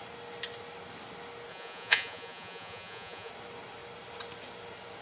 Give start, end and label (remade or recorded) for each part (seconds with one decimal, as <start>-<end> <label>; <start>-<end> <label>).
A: 0.0-1.5 recorded; 1.5-3.3 remade; 3.3-5.0 recorded